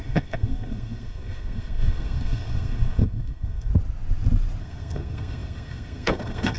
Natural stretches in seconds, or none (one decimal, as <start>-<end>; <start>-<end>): 3.7-4.6